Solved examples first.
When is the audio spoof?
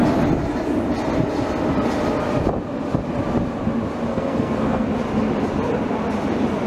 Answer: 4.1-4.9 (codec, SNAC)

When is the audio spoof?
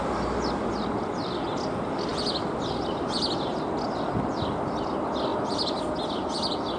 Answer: none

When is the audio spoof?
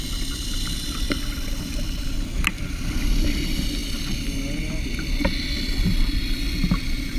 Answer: none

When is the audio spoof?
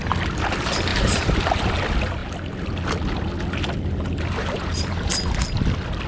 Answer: 0.9-1.5 (vocoder, BigVGAN v2); 4.4-5.1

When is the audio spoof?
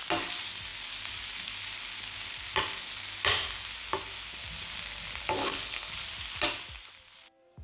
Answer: 5.4-5.9 (codec, HILCodec)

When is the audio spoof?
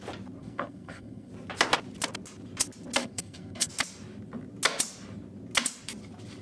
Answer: 0.4-1.3 (codec, SNAC); 3.0-3.7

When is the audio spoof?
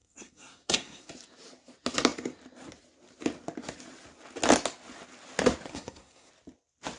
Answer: 0.0-1.1 (codec, SNAC); 5.7-6.3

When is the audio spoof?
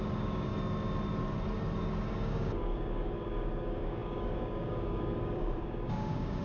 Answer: 0.0-0.5 (codec, DAC); 2.1-6.4